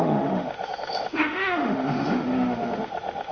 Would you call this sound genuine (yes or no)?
no